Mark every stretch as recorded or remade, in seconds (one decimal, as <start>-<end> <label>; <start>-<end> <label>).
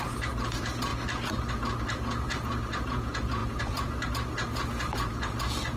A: 0.0-0.9 remade; 0.9-1.5 recorded; 1.5-5.8 remade